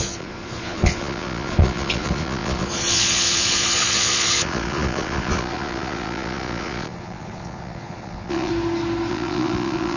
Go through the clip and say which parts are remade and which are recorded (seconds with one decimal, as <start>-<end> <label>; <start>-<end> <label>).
0.0-8.5 remade; 8.5-9.1 recorded; 9.1-10.0 remade